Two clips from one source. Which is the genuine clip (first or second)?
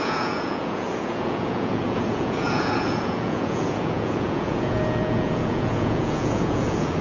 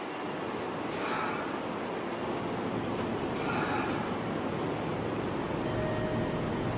second